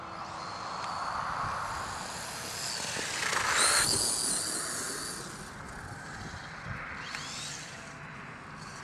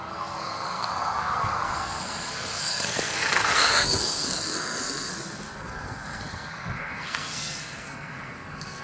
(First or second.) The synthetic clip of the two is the second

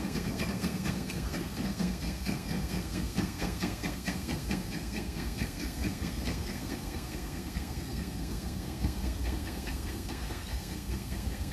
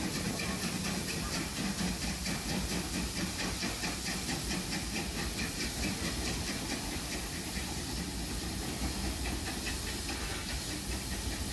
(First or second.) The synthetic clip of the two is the first